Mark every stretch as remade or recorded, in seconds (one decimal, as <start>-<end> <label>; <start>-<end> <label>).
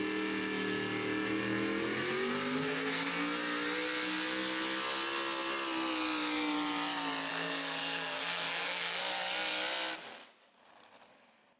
0.0-2.6 recorded; 2.6-3.1 remade; 3.1-7.3 recorded; 7.3-9.0 remade; 9.0-11.6 recorded